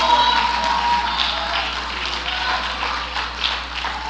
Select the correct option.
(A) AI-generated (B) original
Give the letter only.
B